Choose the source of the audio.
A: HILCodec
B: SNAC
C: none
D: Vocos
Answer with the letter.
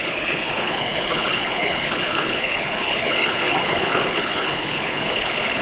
A